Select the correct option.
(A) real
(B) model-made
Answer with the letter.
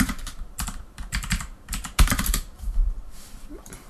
B